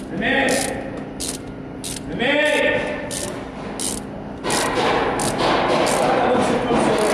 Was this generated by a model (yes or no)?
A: no